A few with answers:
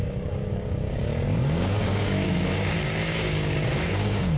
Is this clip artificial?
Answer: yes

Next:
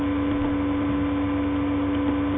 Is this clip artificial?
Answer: no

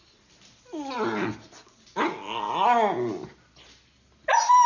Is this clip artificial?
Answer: no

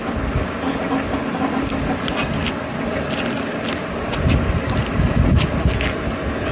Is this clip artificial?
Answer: no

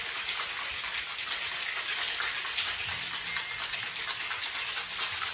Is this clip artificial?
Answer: no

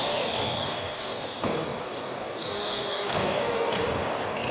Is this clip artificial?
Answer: yes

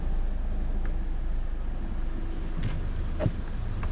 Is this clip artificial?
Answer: no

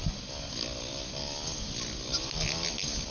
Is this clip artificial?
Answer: no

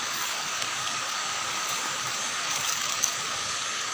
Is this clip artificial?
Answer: yes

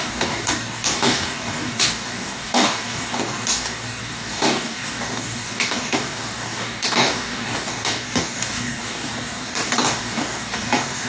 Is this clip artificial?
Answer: yes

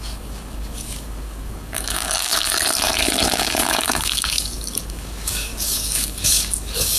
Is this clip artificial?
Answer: yes